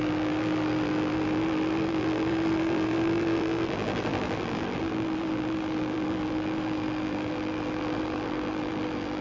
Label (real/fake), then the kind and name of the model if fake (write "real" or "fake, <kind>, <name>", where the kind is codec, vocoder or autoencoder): fake, vocoder, BigVGAN v2